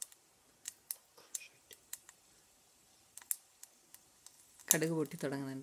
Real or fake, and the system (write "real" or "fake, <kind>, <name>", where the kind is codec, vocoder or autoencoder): real